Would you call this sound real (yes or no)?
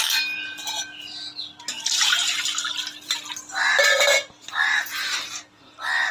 yes